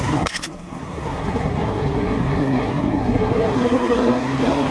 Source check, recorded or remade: remade